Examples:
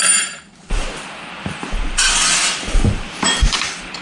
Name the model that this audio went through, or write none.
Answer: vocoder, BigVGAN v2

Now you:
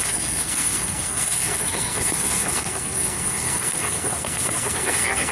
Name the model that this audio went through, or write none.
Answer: codec, SNAC